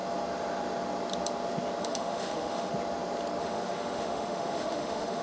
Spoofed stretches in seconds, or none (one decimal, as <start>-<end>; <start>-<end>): 1.8-2.7; 3.4-5.2